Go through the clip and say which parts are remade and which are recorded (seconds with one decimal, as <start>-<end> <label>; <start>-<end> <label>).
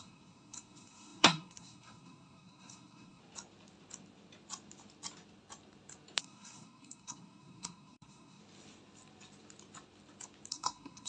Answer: 0.0-3.2 remade; 3.2-6.2 recorded; 6.2-8.4 remade; 8.4-10.5 recorded; 10.5-11.1 remade